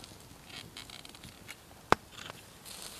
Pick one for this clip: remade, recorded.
recorded